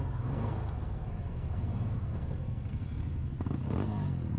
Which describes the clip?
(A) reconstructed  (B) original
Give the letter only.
A